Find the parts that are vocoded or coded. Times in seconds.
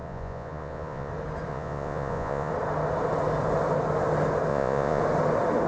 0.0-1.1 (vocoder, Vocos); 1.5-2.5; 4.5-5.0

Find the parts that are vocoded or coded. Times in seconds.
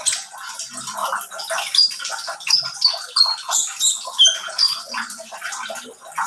none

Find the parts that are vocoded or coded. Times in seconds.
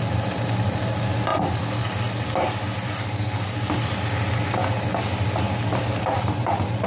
none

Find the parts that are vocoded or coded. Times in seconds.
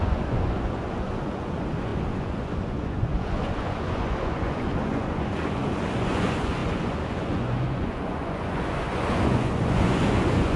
0.0-10.6 (vocoder, Vocos)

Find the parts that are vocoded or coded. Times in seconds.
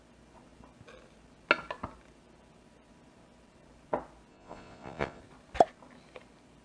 4.3-5.2 (vocoder, Vocos)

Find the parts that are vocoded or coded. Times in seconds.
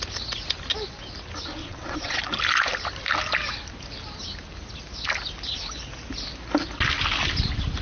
1.6-2.2 (vocoder, Vocos)